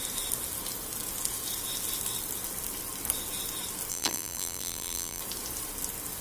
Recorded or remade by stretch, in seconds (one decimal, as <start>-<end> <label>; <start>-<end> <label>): 0.0-3.9 recorded; 3.9-5.2 remade; 5.2-6.2 recorded